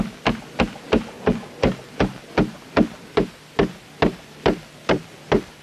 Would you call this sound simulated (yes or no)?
no